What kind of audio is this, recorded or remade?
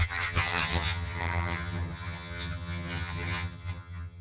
remade